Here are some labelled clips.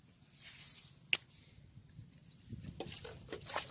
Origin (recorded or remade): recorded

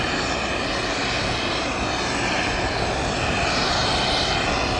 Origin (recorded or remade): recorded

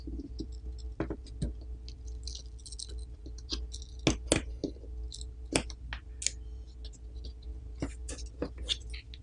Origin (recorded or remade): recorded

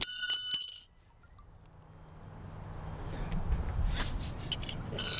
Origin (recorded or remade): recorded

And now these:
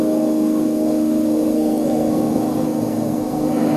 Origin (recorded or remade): remade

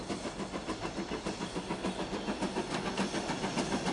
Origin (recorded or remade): recorded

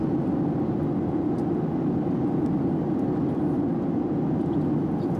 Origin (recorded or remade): recorded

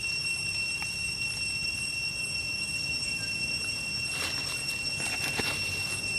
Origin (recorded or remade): recorded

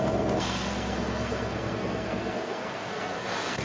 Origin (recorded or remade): remade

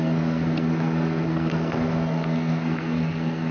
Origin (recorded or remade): remade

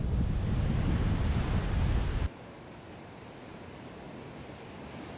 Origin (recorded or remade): recorded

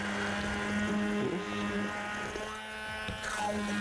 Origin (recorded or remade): recorded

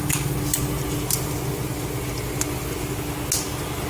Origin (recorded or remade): recorded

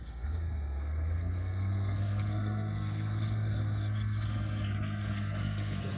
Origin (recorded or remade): remade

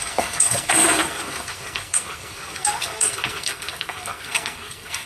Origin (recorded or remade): remade